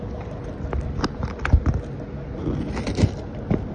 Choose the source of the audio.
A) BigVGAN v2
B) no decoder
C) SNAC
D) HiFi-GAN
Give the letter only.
B